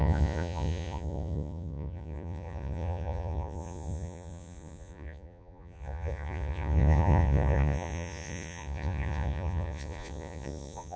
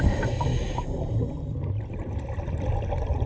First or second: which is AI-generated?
first